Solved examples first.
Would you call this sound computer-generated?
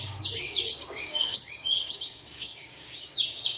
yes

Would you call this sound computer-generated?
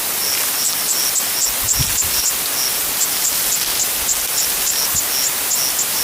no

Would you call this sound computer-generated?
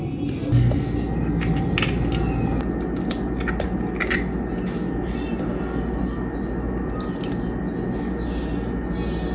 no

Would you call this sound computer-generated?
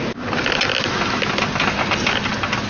no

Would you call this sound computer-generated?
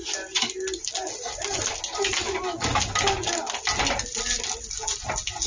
no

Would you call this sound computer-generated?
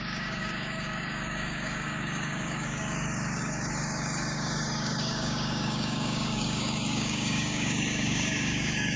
yes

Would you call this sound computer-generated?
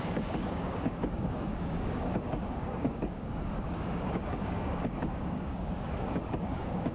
yes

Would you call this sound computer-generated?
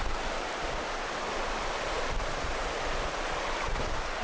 no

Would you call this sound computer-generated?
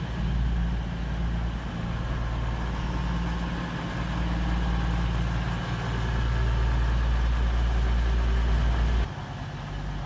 no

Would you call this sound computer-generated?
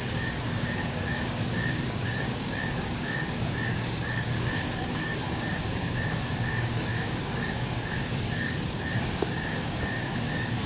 yes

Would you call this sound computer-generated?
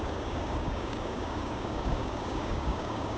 yes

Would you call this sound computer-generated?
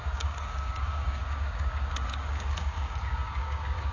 yes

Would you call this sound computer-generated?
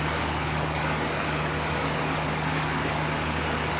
yes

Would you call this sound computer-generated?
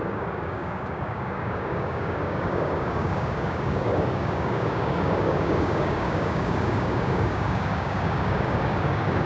yes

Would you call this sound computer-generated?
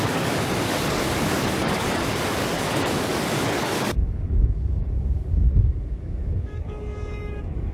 yes